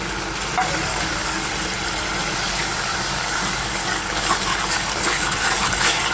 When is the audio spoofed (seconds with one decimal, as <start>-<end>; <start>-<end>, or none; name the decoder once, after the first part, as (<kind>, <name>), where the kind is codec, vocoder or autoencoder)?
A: 0.9-1.5 (codec, DAC); 2.2-6.1